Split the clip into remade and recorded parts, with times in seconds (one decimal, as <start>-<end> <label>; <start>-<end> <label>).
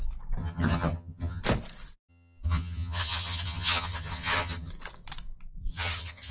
0.0-0.4 recorded; 0.4-1.4 remade; 1.4-2.1 recorded; 2.1-4.7 remade; 4.7-5.7 recorded; 5.7-6.3 remade